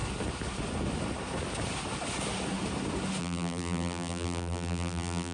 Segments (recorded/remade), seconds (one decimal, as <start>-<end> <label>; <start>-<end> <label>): 0.0-3.2 recorded; 3.2-5.3 remade